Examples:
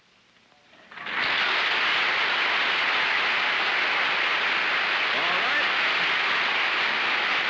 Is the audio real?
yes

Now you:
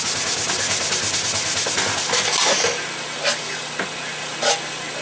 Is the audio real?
yes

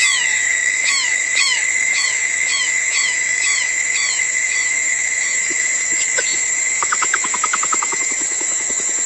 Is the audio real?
no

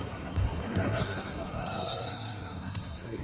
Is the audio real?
no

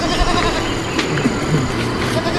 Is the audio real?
yes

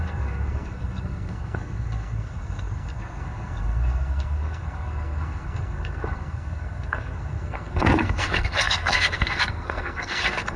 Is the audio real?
no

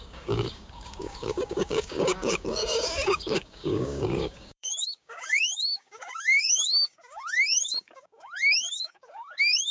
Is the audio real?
no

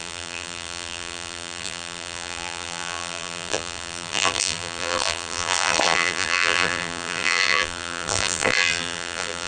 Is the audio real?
no